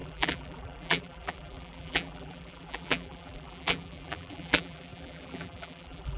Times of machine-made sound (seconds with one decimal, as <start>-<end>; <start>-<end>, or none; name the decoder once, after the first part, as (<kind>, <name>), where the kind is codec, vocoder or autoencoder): 0.0-6.2 (vocoder, BigVGAN v2)